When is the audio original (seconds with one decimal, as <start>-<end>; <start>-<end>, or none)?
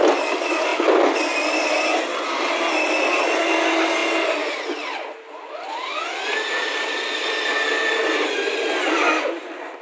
0.0-9.8